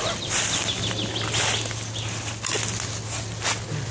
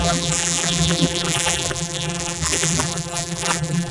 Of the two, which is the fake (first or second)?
second